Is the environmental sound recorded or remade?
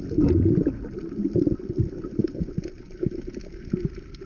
recorded